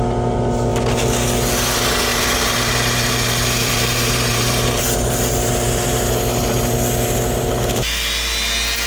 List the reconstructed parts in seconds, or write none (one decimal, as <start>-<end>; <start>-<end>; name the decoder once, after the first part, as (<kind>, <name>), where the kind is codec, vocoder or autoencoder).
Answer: 2.1-4.8 (vocoder, BigVGAN v2)